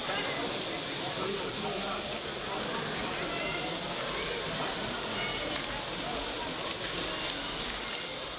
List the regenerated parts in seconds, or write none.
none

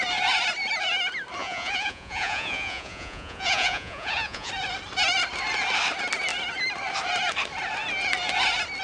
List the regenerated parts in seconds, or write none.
1.4-4.5 (vocoder, Vocos)

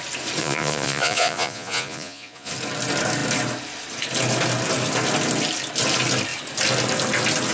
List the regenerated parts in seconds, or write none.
0.4-2.5 (vocoder, Vocos)

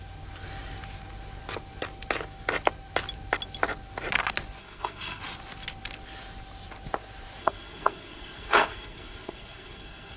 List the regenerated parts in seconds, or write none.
4.6-5.2 (codec, SNAC); 7.4-10.2

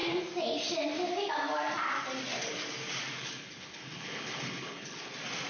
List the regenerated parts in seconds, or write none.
3.2-5.1 (codec, HILCodec)